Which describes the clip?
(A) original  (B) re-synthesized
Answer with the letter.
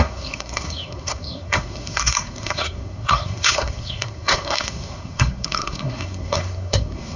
B